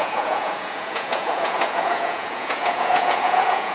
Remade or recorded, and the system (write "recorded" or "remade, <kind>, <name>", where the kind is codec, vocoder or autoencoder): remade, vocoder, Vocos